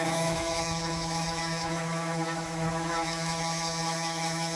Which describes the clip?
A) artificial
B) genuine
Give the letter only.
A